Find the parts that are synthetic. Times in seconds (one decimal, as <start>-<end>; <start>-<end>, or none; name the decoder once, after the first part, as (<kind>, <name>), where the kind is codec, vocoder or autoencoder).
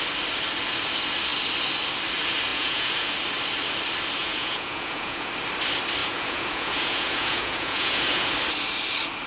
2.5-3.1 (vocoder, Vocos); 4.2-5.3; 6.0-8.3